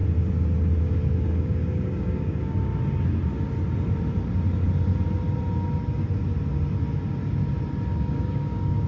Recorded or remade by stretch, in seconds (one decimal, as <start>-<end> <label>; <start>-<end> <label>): 0.0-0.8 recorded; 0.8-2.7 remade; 2.7-7.9 recorded; 7.9-8.9 remade